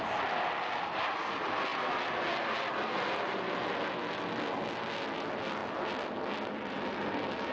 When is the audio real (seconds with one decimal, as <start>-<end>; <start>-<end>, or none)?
0.0-7.5